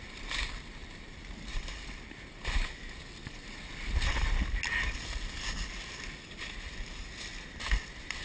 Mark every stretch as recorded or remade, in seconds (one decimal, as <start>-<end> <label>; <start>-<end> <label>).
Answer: 0.0-0.8 recorded; 0.8-2.8 remade; 2.8-8.2 recorded

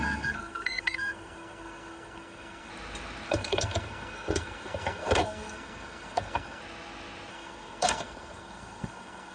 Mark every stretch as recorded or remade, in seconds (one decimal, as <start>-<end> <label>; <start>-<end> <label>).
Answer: 0.0-2.7 remade; 2.7-3.3 recorded; 3.3-6.6 remade; 6.6-7.3 recorded; 7.3-9.3 remade